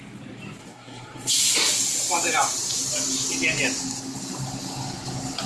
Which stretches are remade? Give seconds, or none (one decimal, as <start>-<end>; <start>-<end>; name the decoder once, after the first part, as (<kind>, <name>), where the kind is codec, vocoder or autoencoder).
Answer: 0.6-1.3 (codec, SNAC)

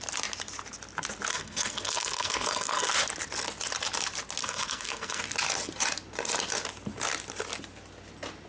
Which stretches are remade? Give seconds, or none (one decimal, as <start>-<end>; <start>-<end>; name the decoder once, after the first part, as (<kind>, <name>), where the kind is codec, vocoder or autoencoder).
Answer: 1.3-2.9 (codec, SNAC); 4.4-5.2

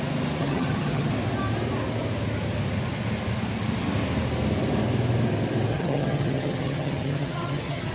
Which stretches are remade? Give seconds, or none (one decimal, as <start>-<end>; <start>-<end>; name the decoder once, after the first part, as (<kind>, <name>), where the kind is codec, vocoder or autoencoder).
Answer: 0.4-1.1 (vocoder, HiFi-GAN); 5.7-7.9

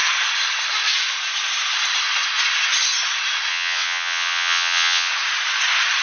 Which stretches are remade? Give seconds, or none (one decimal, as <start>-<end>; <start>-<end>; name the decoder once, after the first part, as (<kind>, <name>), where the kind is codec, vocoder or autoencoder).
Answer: 3.5-5.1 (vocoder, WaveNeXt)

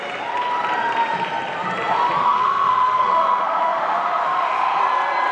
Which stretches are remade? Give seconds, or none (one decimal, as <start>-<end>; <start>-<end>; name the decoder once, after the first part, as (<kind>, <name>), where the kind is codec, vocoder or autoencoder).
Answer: 2.2-4.8 (autoencoder, DAC-VAE)

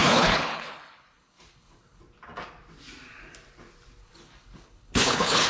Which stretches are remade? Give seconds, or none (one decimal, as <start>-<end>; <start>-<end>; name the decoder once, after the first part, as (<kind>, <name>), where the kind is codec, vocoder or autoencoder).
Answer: 0.0-2.0 (codec, HILCodec); 4.0-5.5